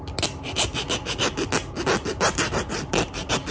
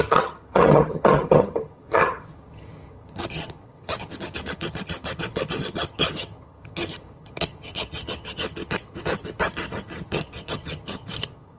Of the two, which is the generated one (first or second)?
second